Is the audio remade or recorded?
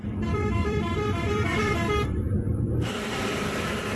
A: remade